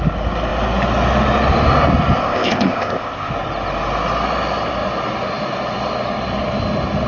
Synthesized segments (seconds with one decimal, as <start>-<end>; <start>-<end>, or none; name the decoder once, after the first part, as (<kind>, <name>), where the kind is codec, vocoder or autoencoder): 2.2-3.3 (codec, ZipCodec)